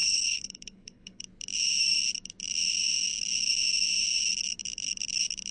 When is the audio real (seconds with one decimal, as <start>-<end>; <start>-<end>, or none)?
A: 1.2-5.5